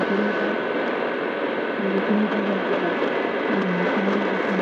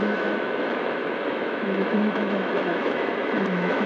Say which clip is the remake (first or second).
second